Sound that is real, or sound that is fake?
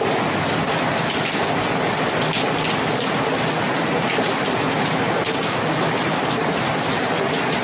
real